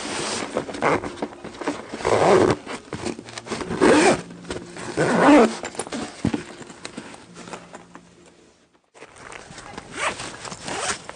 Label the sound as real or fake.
real